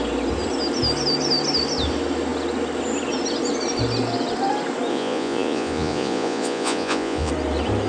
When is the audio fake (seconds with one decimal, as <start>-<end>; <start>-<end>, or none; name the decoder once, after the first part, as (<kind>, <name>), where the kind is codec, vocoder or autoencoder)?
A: 4.9-7.3 (vocoder, Vocos)